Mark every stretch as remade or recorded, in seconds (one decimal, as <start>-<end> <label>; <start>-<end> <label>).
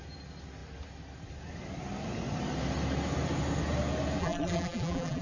0.0-4.2 recorded; 4.2-5.2 remade